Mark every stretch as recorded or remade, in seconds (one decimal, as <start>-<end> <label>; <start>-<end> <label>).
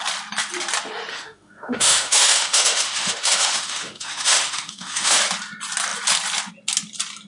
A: 0.0-1.1 recorded; 1.1-5.2 remade; 5.2-7.3 recorded